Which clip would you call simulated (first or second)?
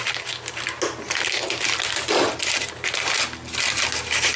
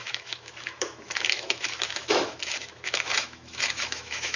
second